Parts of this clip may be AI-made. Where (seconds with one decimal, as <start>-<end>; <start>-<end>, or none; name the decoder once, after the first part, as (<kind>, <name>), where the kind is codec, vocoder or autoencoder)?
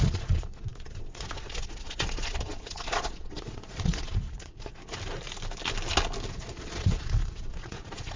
0.0-4.8 (vocoder, Vocos); 6.3-8.2